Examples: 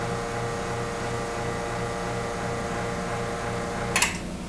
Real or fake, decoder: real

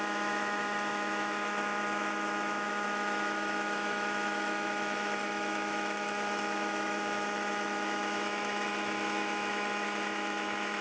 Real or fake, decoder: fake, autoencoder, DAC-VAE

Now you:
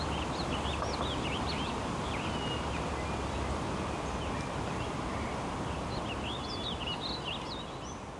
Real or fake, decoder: real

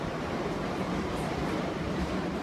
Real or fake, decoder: real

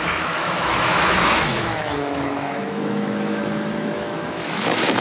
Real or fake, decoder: fake, autoencoder, DAC-VAE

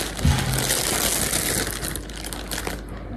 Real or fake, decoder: real